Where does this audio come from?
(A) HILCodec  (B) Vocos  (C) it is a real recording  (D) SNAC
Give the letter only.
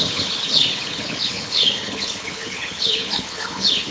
A